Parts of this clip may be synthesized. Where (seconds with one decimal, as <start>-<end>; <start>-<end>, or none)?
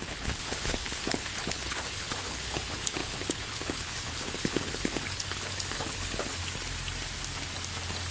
0.0-6.4